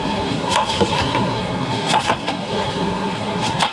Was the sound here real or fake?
fake